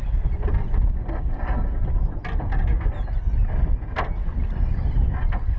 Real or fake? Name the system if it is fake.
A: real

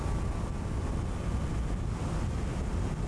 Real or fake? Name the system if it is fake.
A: real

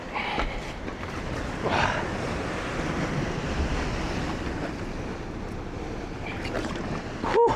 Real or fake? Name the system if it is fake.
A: real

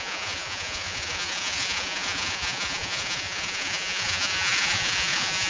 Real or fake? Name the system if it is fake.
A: fake, vocoder, Vocos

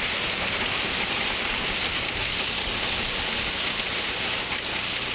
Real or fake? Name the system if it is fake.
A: fake, vocoder, BigVGAN v2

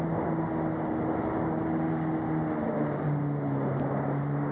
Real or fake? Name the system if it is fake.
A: real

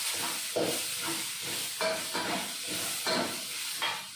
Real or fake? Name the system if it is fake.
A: real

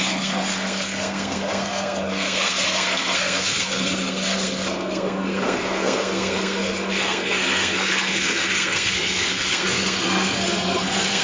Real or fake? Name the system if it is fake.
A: fake, codec, SNAC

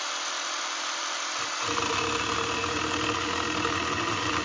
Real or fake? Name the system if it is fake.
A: real